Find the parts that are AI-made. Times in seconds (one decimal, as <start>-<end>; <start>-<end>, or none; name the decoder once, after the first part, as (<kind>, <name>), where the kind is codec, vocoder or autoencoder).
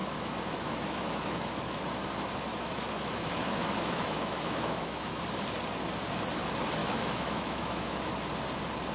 0.0-1.8 (autoencoder, DAC-VAE); 2.5-5.2; 6.8-8.1